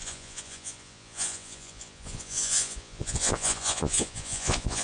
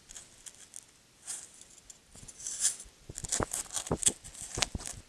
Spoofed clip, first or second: first